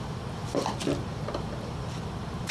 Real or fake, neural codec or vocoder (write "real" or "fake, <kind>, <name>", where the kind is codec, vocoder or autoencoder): fake, vocoder, BigVGAN v2